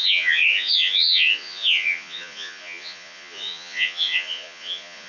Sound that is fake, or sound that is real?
fake